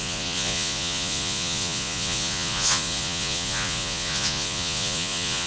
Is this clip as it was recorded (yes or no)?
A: no